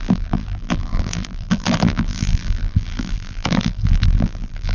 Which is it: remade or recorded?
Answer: remade